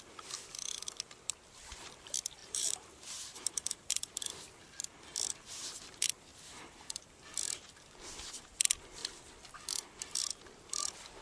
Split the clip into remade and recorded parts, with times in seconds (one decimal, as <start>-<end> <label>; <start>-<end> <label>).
0.0-2.4 recorded; 2.4-4.3 remade; 4.3-6.3 recorded; 6.3-7.2 remade; 7.2-11.2 recorded